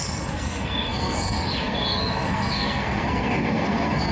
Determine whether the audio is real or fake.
fake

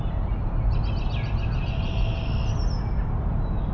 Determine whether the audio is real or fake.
real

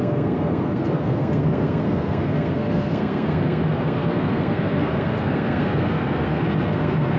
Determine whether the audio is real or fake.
fake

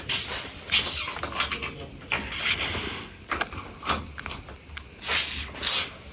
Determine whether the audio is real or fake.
real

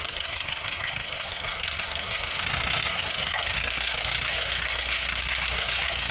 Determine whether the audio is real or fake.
fake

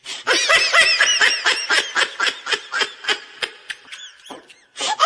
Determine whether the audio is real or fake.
real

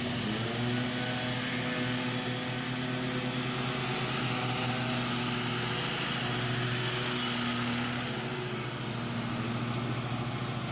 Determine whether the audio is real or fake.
real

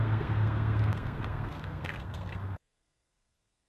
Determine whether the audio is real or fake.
fake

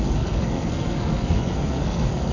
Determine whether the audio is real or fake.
fake